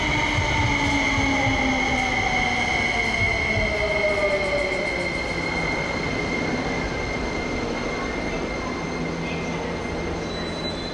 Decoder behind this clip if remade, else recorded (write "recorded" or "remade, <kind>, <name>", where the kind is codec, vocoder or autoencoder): recorded